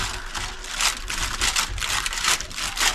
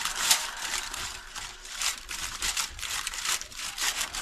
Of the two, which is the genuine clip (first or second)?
first